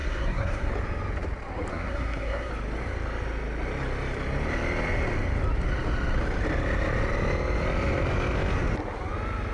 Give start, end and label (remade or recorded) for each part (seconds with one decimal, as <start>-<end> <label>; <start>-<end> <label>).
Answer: 0.0-0.7 remade; 0.7-1.7 recorded; 1.7-2.5 remade; 2.5-9.5 recorded